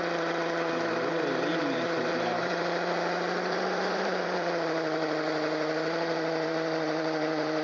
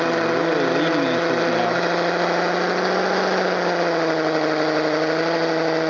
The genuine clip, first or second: second